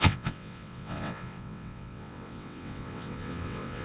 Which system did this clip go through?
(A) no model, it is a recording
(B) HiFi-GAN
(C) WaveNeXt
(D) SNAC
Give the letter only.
C